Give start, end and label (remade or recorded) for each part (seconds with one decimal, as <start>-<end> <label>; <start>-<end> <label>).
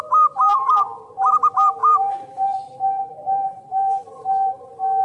0.0-0.5 recorded; 0.5-1.2 remade; 1.2-1.8 recorded; 1.8-5.0 remade